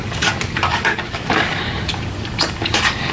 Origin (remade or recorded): remade